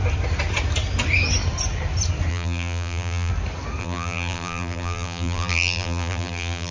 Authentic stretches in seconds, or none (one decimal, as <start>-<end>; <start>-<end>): 0.0-2.3; 3.3-3.8